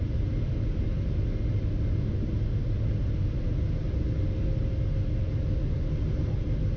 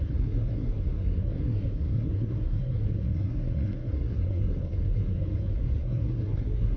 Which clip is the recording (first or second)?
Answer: first